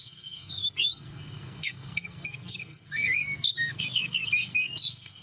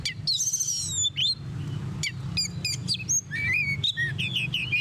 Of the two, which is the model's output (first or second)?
first